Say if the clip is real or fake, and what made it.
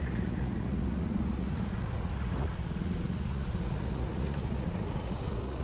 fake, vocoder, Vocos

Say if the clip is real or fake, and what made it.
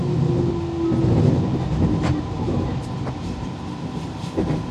real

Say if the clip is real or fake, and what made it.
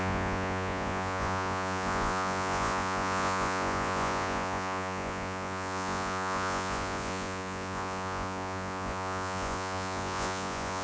fake, vocoder, Vocos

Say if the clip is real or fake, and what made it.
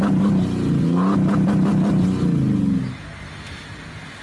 real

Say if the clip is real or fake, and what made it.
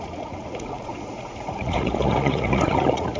fake, vocoder, Vocos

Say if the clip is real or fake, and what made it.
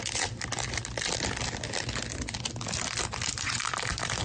real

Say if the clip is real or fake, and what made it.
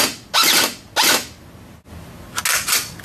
real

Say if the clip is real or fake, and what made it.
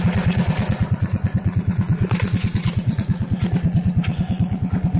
fake, vocoder, Vocos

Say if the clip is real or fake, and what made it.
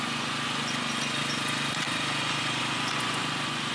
fake, vocoder, Vocos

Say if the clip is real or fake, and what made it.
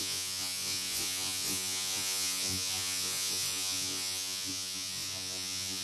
fake, vocoder, Vocos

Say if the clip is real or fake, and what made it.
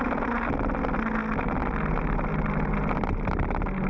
real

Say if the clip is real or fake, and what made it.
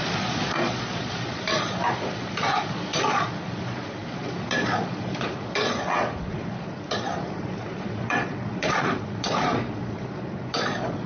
fake, vocoder, Vocos